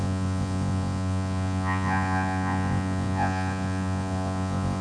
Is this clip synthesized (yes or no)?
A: yes